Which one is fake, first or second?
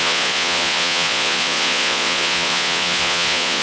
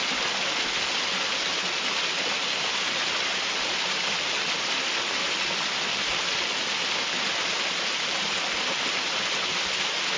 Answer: first